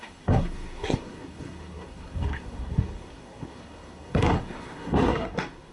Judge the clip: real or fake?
fake